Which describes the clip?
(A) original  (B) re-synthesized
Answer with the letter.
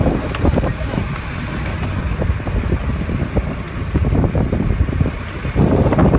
A